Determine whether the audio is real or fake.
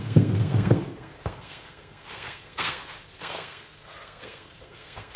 fake